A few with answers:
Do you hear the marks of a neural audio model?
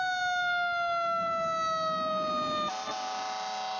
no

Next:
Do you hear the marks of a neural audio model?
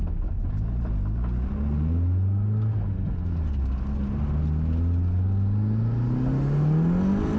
no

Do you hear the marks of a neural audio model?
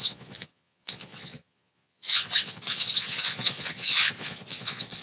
yes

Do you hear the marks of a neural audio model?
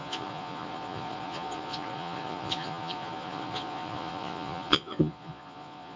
yes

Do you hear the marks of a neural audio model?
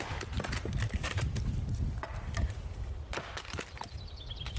no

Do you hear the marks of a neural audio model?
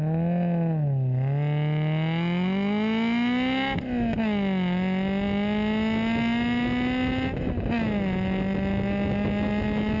no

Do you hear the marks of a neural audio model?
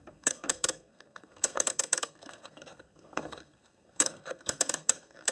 yes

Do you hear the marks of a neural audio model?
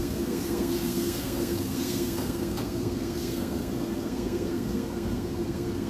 yes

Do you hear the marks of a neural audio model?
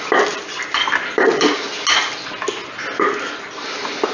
no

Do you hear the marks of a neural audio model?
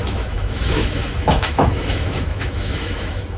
yes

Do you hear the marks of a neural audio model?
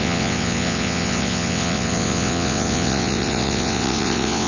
yes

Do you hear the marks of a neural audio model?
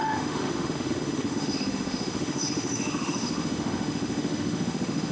yes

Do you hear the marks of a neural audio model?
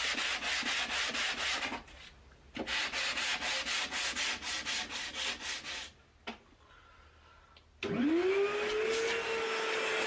no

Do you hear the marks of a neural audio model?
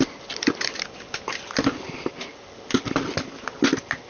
no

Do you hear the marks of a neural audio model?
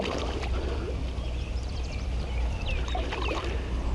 yes